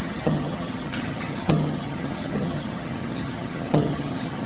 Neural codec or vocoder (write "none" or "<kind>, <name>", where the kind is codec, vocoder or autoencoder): vocoder, HiFi-GAN